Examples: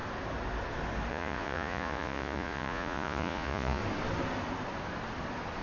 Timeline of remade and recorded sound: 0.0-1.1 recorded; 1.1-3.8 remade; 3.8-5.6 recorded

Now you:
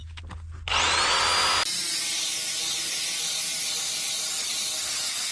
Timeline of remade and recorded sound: 0.0-5.3 recorded